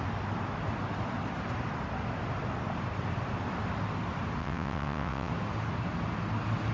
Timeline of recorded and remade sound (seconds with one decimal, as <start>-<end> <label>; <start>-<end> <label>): 0.0-4.4 recorded; 4.4-5.3 remade; 5.3-6.7 recorded